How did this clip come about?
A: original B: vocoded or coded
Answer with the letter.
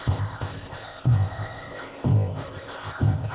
B